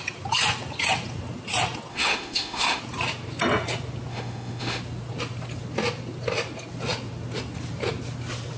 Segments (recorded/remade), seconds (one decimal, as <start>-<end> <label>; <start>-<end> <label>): 0.0-1.9 recorded; 1.9-2.8 remade; 2.8-4.1 recorded; 4.1-4.8 remade; 4.8-8.6 recorded